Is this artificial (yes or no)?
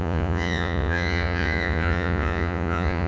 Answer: yes